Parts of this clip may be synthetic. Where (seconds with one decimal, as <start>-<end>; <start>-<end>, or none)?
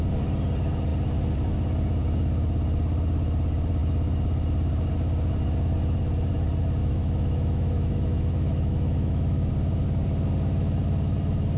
6.8-9.5